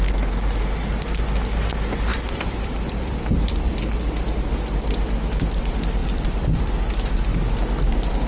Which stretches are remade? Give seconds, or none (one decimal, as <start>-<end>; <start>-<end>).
2.1-3.7; 6.0-6.7